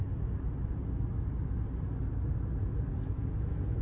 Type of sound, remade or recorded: recorded